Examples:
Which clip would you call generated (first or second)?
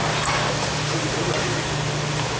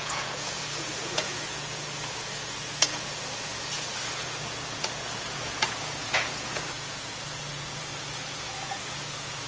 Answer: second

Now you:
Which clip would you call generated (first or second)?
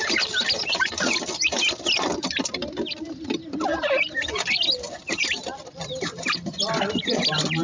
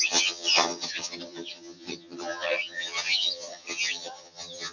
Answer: second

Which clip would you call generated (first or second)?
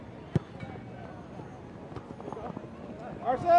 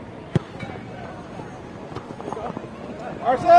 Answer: second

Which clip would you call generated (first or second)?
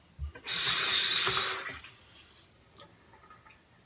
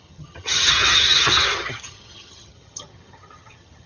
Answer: second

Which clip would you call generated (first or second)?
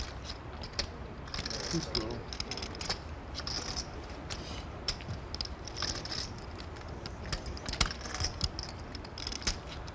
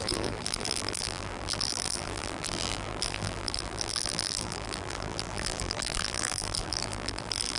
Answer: second